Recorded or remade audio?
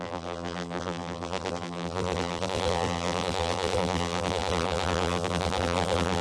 remade